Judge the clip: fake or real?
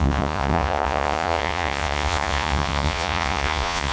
fake